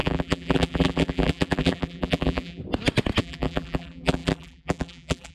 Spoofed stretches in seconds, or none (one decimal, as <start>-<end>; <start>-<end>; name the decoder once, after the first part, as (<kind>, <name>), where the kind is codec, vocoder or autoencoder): 0.0-2.6 (vocoder, BigVGAN v2); 3.2-5.3